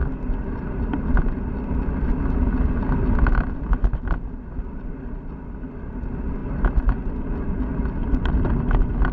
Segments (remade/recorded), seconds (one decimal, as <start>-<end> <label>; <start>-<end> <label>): 0.0-9.1 recorded

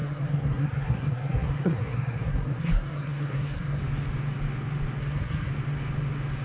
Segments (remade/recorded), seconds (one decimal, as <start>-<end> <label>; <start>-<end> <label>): 0.0-3.8 remade; 3.8-5.0 recorded; 5.0-5.5 remade; 5.5-6.4 recorded